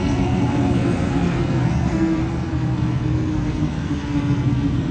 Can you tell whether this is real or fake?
fake